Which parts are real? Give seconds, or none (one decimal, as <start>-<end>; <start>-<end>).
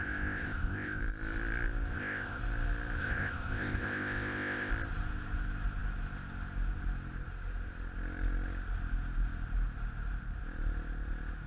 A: 1.0-1.9; 2.4-3.0; 4.7-11.5